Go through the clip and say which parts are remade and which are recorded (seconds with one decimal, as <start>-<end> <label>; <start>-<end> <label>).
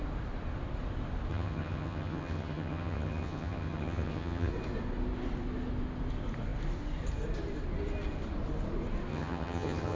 0.0-1.3 recorded; 1.3-4.5 remade; 4.5-9.1 recorded; 9.1-10.0 remade